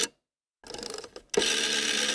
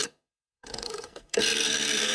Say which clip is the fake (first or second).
second